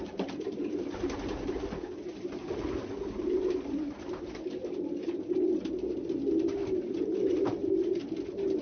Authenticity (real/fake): real